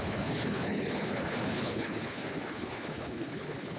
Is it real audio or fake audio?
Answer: fake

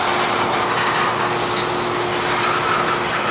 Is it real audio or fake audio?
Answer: real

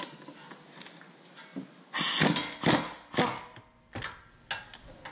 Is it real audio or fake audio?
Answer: real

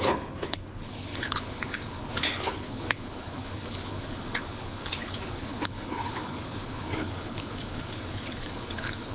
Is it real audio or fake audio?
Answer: fake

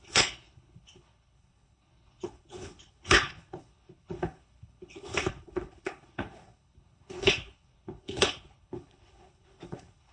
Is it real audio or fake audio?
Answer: fake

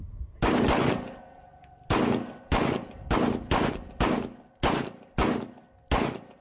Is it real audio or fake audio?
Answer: real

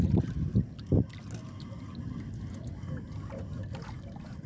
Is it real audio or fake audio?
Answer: real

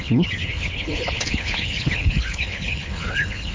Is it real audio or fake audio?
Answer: fake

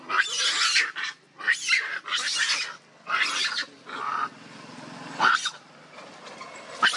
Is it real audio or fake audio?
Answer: real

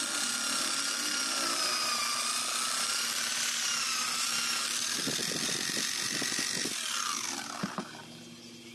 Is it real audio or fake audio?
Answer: real